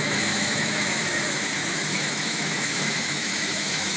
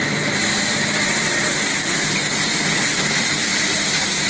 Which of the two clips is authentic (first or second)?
second